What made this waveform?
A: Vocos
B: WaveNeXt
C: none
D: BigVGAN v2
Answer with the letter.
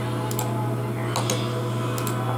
C